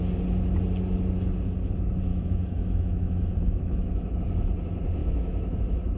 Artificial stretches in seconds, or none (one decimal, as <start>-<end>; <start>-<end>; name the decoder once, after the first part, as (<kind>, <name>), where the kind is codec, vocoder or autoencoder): 2.1-4.2 (autoencoder, DAC-VAE); 5.0-5.6